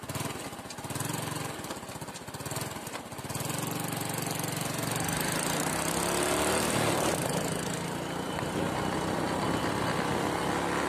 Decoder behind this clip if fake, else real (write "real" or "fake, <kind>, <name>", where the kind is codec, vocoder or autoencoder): real